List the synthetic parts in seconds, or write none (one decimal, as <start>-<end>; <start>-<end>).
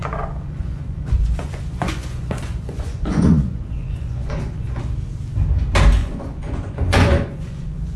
0.0-4.8; 6.0-8.0